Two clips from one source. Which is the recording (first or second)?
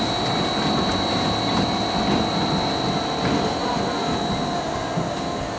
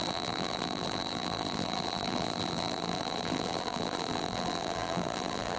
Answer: first